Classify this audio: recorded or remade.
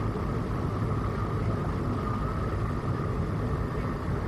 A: recorded